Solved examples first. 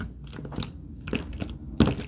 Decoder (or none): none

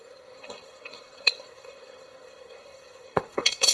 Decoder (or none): codec, SNAC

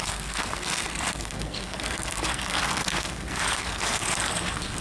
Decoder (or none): codec, SNAC